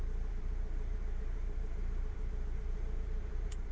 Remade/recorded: remade